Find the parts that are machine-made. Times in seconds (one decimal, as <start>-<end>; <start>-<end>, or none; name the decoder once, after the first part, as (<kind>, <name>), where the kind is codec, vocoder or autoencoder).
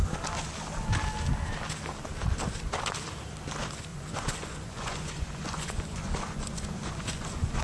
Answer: 3.9-7.6 (vocoder, Vocos)